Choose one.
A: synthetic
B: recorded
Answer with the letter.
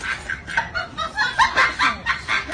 B